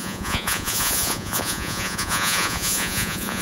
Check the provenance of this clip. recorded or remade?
remade